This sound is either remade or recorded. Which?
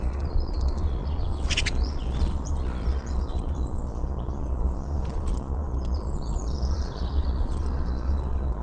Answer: remade